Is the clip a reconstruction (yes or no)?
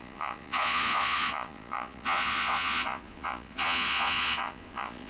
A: yes